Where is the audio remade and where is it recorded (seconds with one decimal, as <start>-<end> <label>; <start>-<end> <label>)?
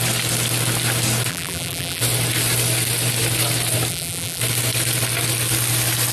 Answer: 0.0-1.3 recorded; 1.3-2.0 remade; 2.0-3.9 recorded; 3.9-4.4 remade; 4.4-6.1 recorded